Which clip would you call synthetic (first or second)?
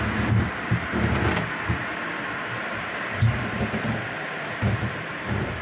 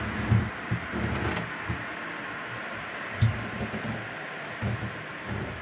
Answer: first